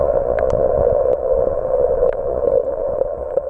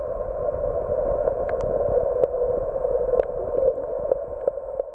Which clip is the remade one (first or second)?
first